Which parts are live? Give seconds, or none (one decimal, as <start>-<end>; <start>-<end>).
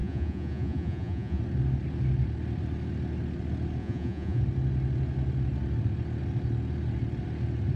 1.4-3.8; 4.4-7.8